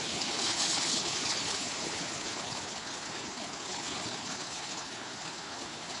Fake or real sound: fake